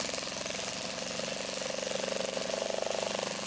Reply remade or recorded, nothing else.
recorded